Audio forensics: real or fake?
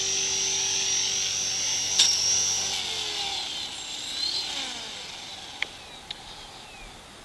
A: real